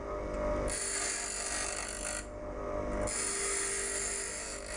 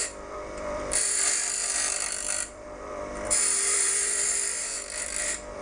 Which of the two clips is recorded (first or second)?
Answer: first